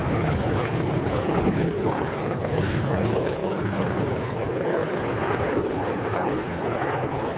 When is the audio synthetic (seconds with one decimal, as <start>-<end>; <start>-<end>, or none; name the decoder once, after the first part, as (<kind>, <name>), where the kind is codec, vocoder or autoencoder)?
0.0-7.4 (codec, HILCodec)